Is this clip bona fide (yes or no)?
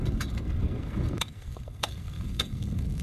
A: no